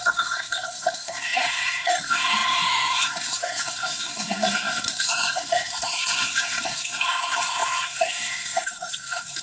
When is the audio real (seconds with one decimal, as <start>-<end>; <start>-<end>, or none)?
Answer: none